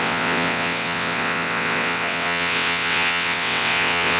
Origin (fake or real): fake